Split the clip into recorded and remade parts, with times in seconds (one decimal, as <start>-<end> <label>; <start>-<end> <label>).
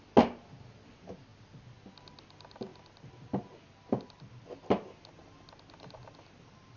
0.0-6.8 recorded